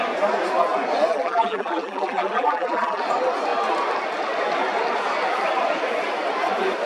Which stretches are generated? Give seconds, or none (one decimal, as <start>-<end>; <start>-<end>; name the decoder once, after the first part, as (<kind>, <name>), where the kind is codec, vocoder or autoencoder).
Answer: 1.1-3.0 (vocoder, BigVGAN v2)